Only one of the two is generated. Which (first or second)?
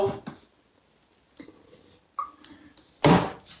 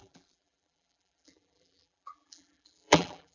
second